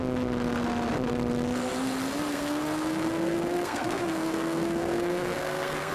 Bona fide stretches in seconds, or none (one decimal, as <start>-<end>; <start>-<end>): 0.0-2.3

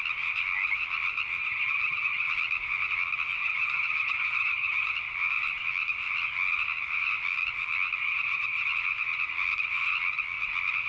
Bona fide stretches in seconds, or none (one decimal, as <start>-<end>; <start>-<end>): 0.0-1.4; 2.3-3.4; 4.9-8.0; 8.7-10.9

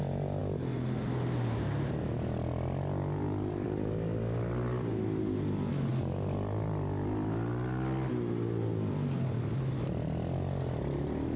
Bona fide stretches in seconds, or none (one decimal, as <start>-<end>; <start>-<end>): 0.0-11.4

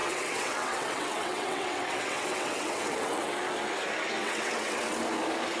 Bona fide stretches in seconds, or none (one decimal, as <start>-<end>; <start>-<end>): 3.3-4.2; 5.0-5.6